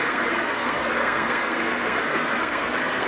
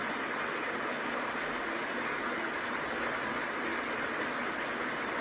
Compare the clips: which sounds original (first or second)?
second